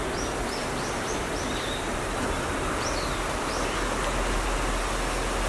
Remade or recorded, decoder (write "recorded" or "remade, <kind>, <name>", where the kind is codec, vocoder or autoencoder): recorded